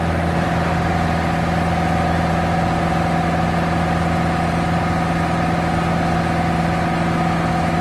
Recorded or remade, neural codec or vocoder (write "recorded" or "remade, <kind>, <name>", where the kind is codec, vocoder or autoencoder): recorded